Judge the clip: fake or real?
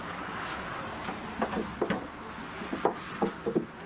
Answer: real